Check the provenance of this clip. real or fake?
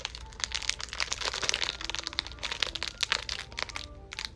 real